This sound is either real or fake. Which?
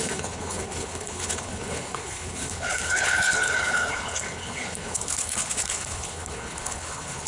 fake